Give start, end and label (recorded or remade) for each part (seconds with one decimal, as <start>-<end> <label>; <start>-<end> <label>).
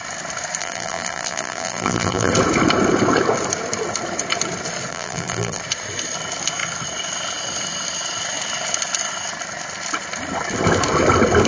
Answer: 0.0-0.6 recorded; 0.6-2.3 remade; 2.3-4.9 recorded; 4.9-5.6 remade; 5.6-11.5 recorded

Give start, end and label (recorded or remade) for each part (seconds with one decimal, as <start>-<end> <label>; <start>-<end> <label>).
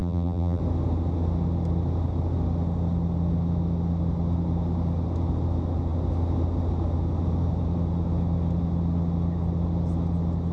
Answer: 0.0-0.6 remade; 0.6-10.5 recorded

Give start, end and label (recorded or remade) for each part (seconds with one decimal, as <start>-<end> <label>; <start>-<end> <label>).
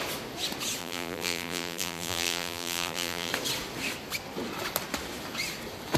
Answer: 0.0-0.8 recorded; 0.8-3.3 remade; 3.3-6.0 recorded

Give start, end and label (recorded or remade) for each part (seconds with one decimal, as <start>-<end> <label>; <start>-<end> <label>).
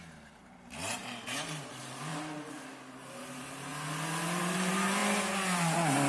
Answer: 0.0-2.1 remade; 2.1-2.9 recorded; 2.9-3.7 remade; 3.7-4.4 recorded; 4.4-5.0 remade; 5.0-6.1 recorded